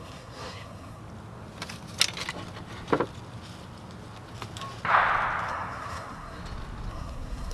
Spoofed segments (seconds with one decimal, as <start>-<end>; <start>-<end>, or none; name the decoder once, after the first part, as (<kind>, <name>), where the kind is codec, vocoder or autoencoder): 0.0-1.0 (codec, SNAC); 5.5-6.4; 6.9-7.5